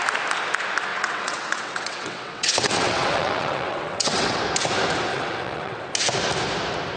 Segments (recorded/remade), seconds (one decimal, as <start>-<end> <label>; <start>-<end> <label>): 0.0-0.9 recorded; 0.9-4.4 remade; 4.4-5.1 recorded; 5.1-5.8 remade; 5.8-7.0 recorded